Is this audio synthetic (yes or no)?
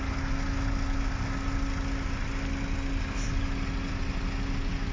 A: no